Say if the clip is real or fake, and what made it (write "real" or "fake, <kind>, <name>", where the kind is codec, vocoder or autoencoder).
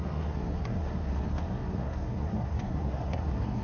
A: fake, codec, SNAC